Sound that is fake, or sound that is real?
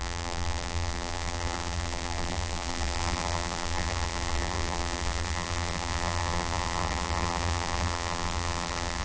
fake